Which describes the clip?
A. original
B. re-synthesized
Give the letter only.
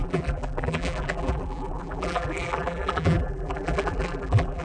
B